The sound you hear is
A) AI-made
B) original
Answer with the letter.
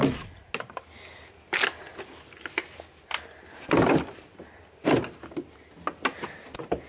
B